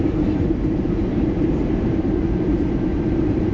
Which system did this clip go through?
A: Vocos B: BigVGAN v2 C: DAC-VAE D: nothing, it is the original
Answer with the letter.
B